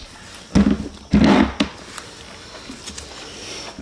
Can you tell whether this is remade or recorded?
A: recorded